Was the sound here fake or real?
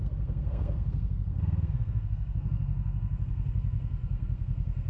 fake